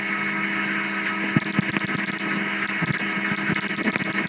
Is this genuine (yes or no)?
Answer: yes